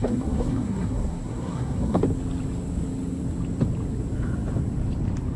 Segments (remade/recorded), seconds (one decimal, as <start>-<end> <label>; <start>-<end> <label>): 0.0-2.0 remade; 2.0-5.4 recorded